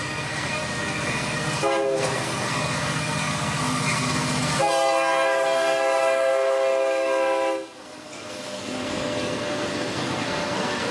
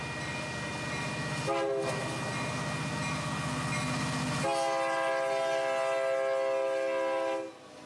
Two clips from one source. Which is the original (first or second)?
second